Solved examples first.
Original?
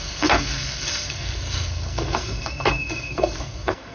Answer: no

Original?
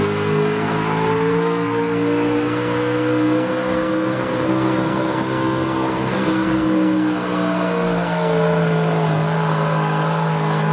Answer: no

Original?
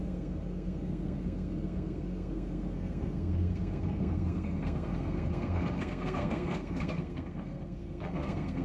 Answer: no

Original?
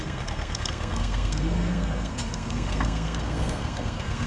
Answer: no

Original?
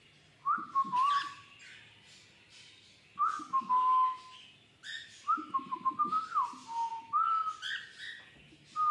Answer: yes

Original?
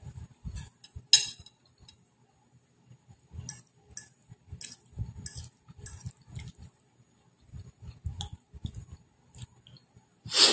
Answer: yes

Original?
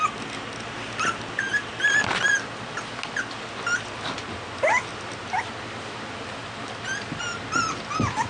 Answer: yes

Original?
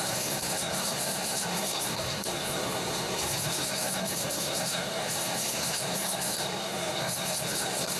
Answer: no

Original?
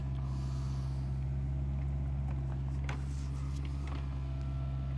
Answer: yes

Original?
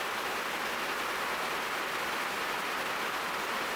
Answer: yes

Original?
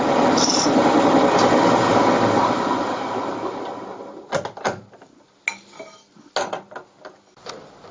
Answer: yes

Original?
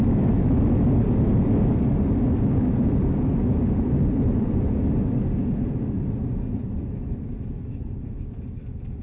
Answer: yes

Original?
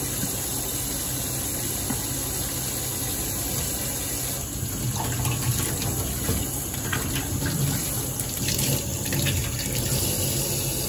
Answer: yes